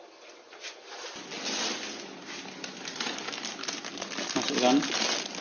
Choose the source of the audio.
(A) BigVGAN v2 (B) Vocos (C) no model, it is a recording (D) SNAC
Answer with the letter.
C